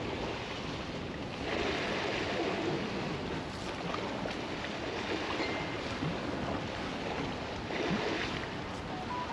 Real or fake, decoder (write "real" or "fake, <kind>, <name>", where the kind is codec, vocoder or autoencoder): real